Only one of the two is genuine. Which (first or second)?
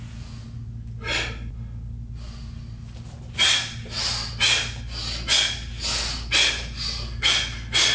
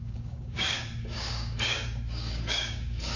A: first